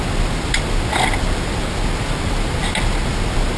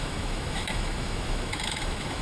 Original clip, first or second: first